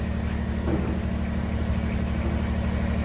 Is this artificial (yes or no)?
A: no